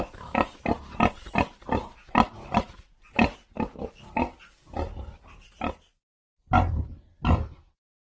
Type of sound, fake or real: real